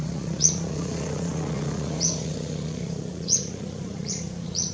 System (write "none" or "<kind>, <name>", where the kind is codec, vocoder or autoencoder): vocoder, Vocos